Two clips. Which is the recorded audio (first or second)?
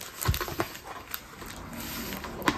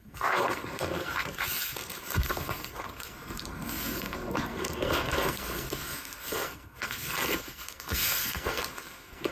first